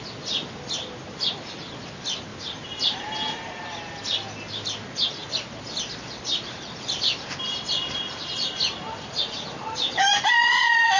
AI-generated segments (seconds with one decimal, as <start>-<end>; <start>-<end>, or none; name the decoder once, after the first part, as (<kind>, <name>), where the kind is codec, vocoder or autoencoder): 2.3-3.1 (vocoder, BigVGAN v2)